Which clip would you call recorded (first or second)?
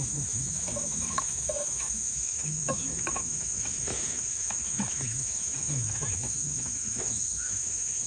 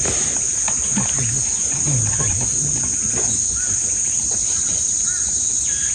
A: second